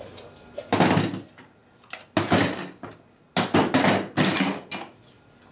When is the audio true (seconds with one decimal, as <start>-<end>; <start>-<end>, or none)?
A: 0.0-5.5